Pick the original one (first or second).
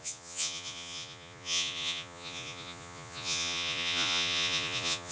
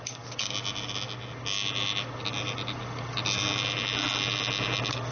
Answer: second